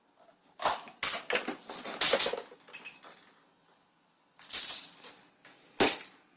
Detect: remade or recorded recorded